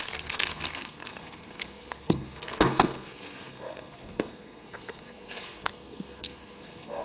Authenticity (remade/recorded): remade